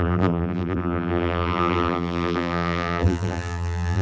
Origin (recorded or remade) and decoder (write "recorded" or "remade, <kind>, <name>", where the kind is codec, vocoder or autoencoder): remade, vocoder, BigVGAN v2